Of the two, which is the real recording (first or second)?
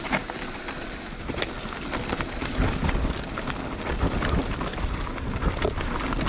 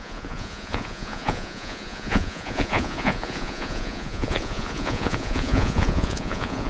first